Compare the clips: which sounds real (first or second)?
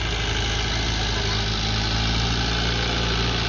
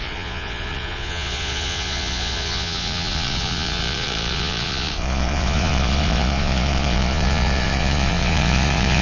first